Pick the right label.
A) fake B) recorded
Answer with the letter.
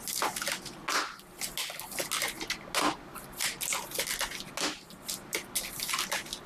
B